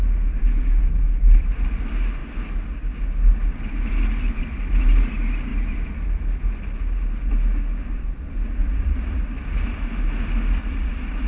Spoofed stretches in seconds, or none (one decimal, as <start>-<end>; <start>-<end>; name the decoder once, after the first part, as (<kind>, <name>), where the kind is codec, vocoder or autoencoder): 8.6-9.2 (vocoder, Vocos); 10.6-11.3